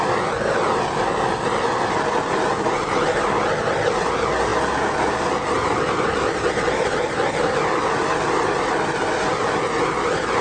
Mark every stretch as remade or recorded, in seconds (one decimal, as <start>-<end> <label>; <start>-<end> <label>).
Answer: 0.0-10.4 recorded